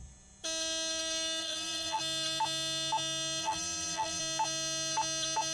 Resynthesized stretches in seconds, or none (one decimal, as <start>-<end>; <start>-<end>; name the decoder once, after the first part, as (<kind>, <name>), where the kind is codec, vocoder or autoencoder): 1.4-2.0 (vocoder, BigVGAN v2); 3.4-4.2